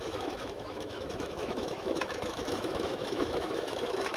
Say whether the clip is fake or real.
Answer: fake